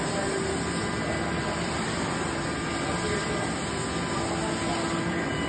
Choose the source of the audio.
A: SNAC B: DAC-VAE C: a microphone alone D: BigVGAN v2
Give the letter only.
C